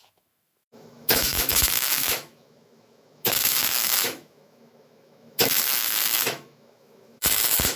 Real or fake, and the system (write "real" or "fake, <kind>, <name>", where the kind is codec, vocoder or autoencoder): fake, autoencoder, DAC-VAE